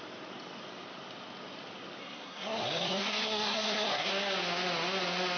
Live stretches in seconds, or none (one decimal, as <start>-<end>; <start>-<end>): 0.0-2.0; 4.1-5.4